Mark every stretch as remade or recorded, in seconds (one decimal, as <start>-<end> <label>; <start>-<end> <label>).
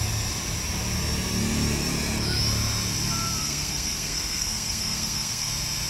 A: 0.0-3.4 recorded; 3.4-5.5 remade; 5.5-5.9 recorded